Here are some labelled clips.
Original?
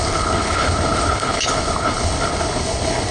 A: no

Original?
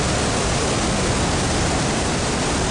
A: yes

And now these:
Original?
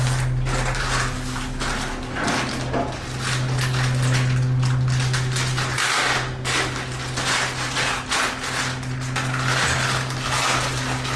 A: yes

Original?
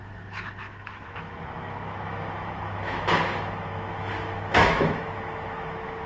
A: no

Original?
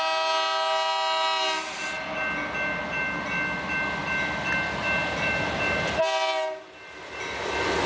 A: yes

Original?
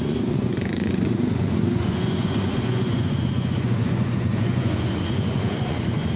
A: no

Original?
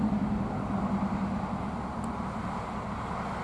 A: yes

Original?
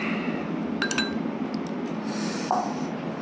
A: yes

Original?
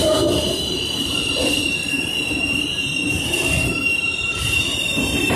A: no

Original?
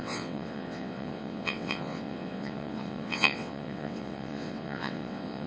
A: no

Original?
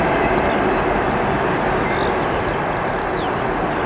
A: yes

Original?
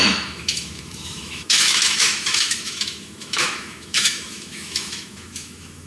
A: no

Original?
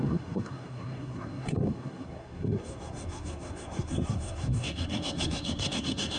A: no